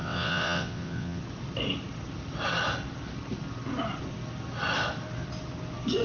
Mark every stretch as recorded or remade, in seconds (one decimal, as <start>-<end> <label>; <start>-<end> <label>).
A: 0.0-1.2 remade; 1.2-6.0 recorded